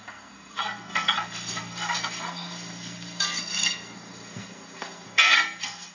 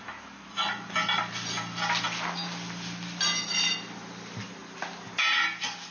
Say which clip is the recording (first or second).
second